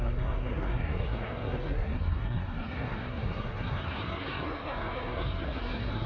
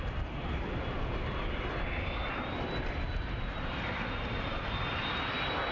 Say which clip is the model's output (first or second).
first